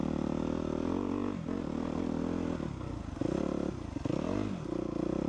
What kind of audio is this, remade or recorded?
recorded